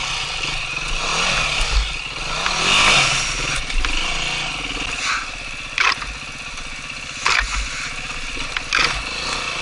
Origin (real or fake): real